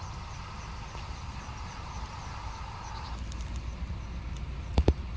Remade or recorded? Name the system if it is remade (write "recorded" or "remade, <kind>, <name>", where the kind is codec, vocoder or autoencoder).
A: recorded